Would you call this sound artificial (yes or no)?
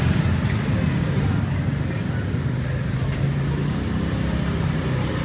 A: no